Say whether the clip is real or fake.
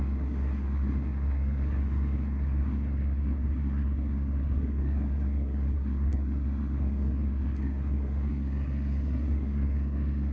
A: fake